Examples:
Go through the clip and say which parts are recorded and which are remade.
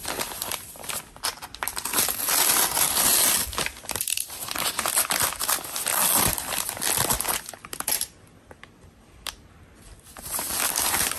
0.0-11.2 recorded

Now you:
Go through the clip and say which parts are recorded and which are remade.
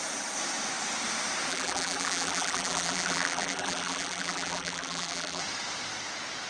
0.0-1.5 recorded; 1.5-5.4 remade; 5.4-6.5 recorded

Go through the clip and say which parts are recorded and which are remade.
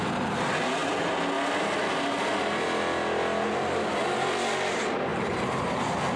0.0-5.1 recorded; 5.1-5.8 remade; 5.8-6.2 recorded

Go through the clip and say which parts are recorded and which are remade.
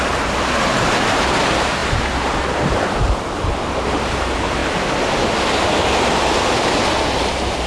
0.0-4.6 remade; 4.6-7.0 recorded; 7.0-7.7 remade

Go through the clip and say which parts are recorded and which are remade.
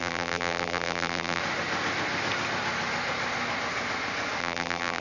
0.0-1.4 remade; 1.4-4.4 recorded; 4.4-5.0 remade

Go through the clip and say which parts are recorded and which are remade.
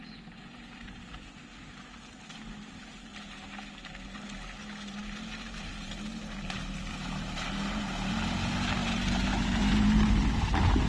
0.0-3.1 remade; 3.1-3.8 recorded; 3.8-10.9 remade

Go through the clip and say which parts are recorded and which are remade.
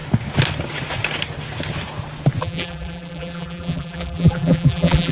0.0-2.4 recorded; 2.4-5.1 remade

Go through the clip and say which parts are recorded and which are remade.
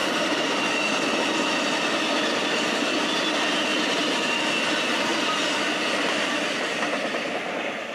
0.0-0.6 remade; 0.6-3.7 recorded; 3.7-4.3 remade; 4.3-7.9 recorded